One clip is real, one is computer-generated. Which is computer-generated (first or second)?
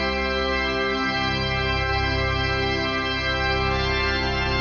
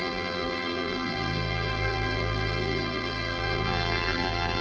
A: second